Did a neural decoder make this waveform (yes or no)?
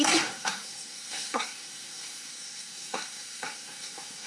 yes